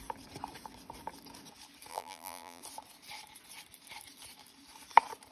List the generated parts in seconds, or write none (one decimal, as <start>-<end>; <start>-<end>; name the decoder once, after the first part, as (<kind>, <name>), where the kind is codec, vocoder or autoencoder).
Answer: 1.9-2.6 (vocoder, BigVGAN v2)